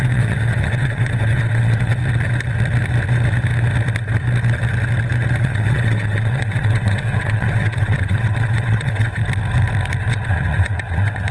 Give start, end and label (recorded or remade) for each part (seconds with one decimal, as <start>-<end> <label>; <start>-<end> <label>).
0.0-2.0 remade; 2.0-5.4 recorded; 5.4-9.2 remade; 9.2-10.1 recorded; 10.1-11.3 remade